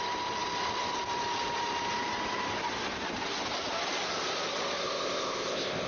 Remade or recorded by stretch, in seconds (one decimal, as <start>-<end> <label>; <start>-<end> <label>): 0.0-4.8 recorded; 4.8-5.9 remade